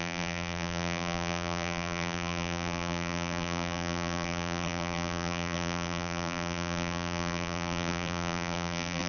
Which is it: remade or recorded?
remade